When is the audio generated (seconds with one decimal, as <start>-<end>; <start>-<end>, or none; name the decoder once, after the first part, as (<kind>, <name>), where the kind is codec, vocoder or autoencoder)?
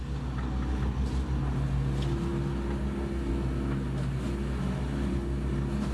none